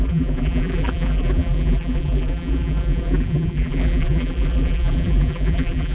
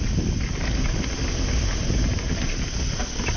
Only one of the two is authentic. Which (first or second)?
second